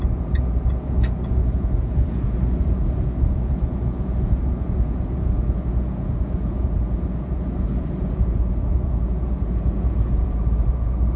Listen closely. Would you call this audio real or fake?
fake